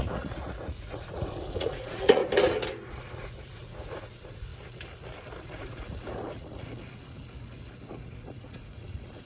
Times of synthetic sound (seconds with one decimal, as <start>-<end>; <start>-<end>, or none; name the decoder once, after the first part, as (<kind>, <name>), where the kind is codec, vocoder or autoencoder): 0.0-2.2 (vocoder, Vocos); 3.0-4.5; 5.6-6.5; 8.2-9.3